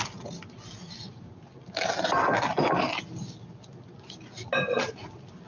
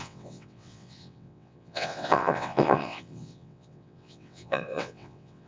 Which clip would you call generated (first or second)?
second